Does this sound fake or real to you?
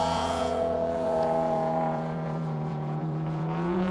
fake